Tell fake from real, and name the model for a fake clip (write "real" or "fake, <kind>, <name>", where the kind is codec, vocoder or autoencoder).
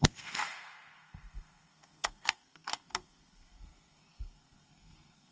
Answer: fake, codec, SNAC